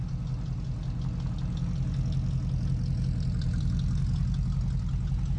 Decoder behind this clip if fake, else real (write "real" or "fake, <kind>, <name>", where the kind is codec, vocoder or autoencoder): real